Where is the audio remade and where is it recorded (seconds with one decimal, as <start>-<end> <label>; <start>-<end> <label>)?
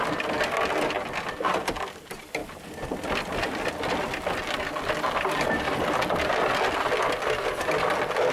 0.0-8.3 recorded